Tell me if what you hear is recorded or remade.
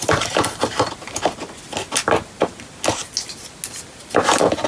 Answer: recorded